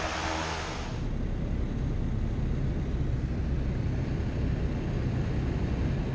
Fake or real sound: real